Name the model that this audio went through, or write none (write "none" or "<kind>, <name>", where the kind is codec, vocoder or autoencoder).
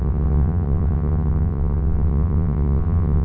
vocoder, WaveNeXt